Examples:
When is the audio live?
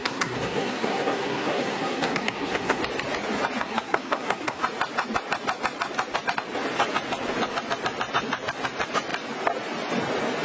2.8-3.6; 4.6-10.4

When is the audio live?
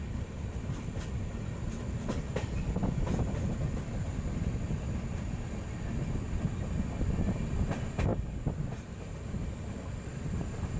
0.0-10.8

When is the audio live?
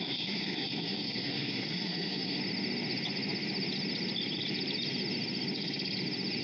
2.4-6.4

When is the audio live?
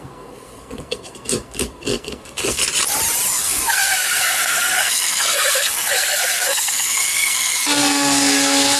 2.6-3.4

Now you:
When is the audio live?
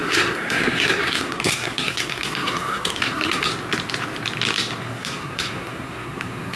3.5-4.8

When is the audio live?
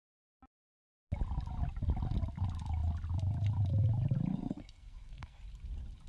0.0-4.3; 5.4-6.1